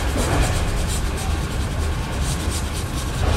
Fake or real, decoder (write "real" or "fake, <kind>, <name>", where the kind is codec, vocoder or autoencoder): real